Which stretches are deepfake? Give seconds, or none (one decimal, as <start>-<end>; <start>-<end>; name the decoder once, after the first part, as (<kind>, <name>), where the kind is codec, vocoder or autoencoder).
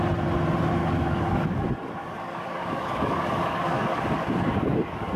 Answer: 0.8-1.6 (codec, DAC); 2.0-5.2